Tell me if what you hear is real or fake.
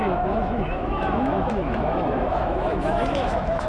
fake